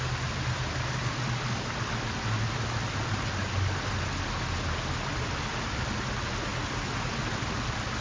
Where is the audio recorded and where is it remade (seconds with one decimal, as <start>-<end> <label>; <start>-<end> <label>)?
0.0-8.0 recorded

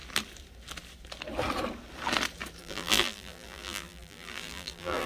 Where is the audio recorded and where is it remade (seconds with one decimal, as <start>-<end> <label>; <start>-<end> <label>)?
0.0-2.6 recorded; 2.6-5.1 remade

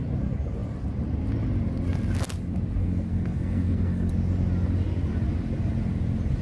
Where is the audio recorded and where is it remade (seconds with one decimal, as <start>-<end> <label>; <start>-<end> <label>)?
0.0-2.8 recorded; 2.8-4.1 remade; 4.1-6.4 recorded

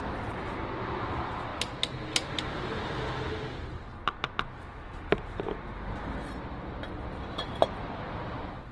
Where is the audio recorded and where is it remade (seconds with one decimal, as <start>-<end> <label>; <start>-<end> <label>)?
0.0-8.7 recorded

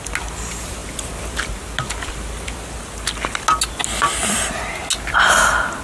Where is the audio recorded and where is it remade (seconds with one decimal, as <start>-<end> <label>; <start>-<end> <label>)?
0.0-5.8 recorded